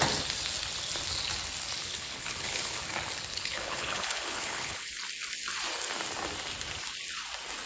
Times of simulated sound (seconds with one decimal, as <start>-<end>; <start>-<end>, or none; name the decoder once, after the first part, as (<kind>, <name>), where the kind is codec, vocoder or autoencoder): 1.8-2.8 (codec, HILCodec); 3.3-4.9